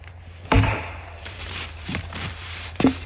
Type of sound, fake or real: fake